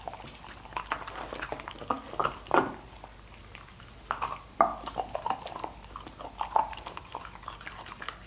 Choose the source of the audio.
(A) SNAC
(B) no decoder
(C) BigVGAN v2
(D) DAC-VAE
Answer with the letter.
B